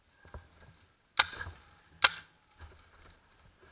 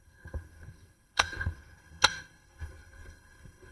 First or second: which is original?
first